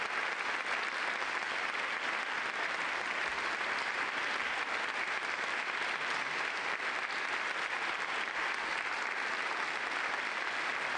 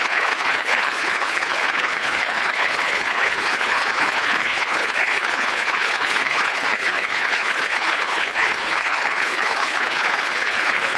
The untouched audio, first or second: first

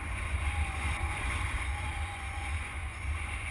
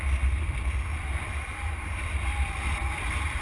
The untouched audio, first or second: second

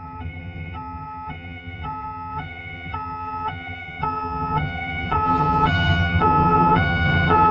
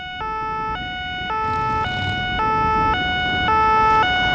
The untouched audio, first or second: second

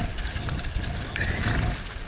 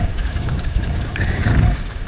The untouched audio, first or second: first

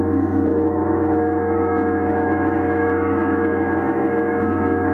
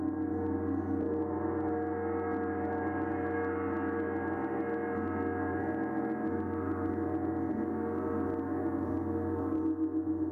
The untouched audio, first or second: second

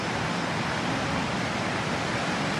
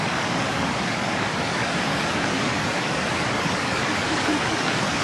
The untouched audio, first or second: first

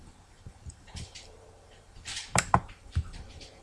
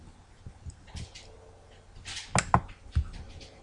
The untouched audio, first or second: second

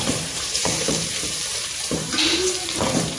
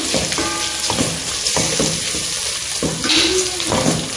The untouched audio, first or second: second